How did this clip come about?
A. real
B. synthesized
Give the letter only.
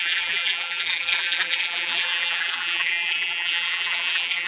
B